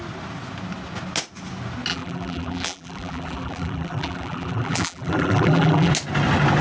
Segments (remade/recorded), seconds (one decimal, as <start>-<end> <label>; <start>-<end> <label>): 0.0-1.9 recorded; 1.9-5.9 remade; 5.9-6.6 recorded